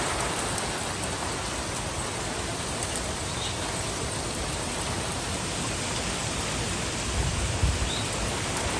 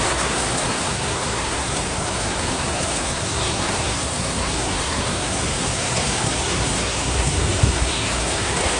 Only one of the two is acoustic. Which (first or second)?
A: first